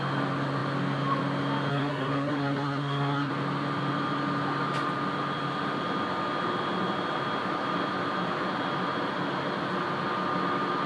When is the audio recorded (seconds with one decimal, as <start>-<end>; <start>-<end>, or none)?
0.0-1.7; 3.3-10.9